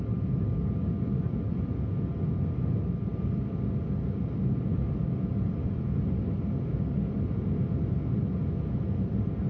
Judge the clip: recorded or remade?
recorded